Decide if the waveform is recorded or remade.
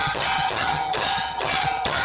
remade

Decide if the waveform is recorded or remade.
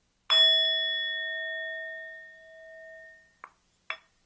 recorded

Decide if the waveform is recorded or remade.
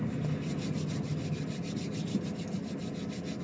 recorded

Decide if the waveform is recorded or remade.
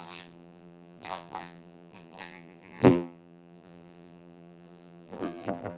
remade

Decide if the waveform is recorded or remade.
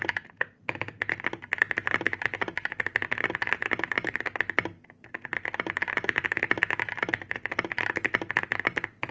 recorded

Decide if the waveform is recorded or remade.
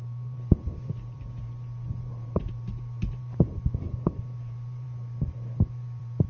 remade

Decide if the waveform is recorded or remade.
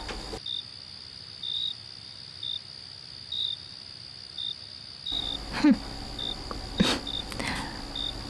recorded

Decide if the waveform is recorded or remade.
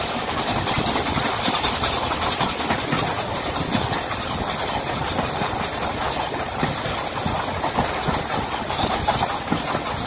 recorded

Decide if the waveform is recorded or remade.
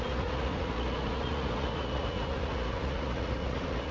remade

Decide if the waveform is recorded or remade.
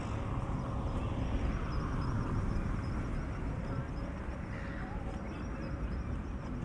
recorded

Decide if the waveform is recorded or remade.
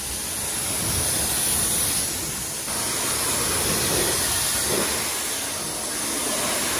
recorded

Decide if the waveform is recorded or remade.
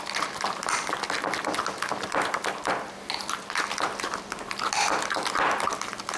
recorded